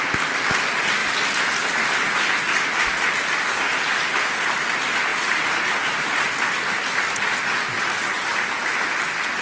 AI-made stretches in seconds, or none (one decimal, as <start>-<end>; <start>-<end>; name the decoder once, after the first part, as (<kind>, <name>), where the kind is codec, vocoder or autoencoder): none